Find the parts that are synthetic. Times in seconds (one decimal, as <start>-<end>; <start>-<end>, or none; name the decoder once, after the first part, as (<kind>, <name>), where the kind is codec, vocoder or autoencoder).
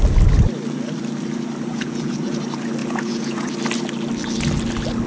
1.7-2.4 (vocoder, Vocos); 2.8-3.5